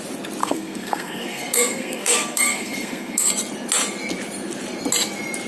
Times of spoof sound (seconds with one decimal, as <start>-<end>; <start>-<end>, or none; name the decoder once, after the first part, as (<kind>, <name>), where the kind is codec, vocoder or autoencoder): 0.4-3.3 (codec, SNAC)